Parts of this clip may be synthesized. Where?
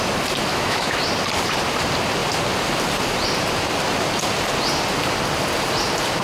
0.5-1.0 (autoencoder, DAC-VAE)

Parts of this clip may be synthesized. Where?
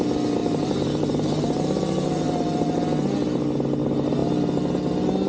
0.4-2.8 (vocoder, BigVGAN v2)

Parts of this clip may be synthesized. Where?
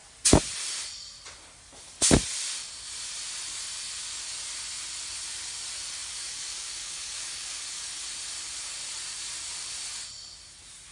6.0-7.8 (codec, DAC)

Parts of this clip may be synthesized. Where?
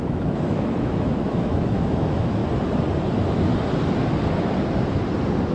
0.0-2.4 (autoencoder, DAC-VAE); 3.1-3.5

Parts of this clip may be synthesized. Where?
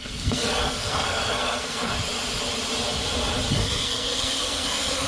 0.0-1.9 (codec, SNAC); 3.5-5.1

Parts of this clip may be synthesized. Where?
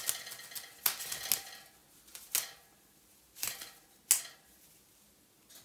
none